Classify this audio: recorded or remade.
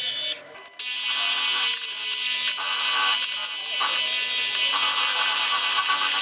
recorded